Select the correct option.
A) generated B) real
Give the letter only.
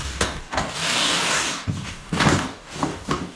A